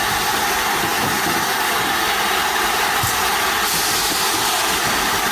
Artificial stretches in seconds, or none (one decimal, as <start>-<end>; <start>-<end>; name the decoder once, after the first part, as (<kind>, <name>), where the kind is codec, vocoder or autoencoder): none